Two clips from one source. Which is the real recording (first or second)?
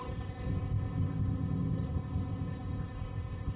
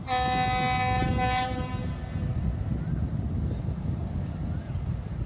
second